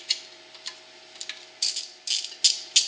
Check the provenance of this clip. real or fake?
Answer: real